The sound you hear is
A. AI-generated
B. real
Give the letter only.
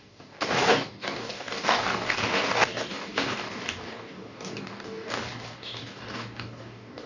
A